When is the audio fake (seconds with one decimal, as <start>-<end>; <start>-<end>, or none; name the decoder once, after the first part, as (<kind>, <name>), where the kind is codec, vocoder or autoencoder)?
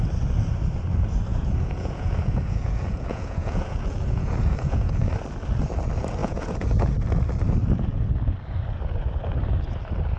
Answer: 1.3-5.1 (vocoder, Vocos); 6.2-6.9